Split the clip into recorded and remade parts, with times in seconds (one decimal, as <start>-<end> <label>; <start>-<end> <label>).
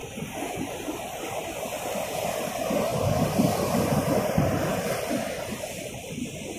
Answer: 0.0-6.6 recorded